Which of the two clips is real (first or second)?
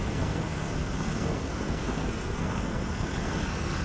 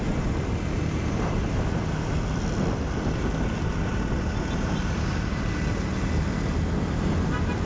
second